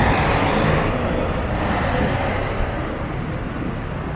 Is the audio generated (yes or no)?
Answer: no